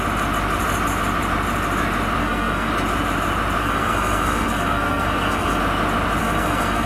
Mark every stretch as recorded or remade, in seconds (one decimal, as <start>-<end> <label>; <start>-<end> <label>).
0.0-2.2 recorded; 2.2-2.7 remade; 2.7-3.6 recorded; 3.6-5.6 remade; 5.6-6.2 recorded; 6.2-6.9 remade